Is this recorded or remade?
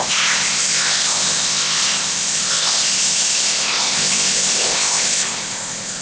remade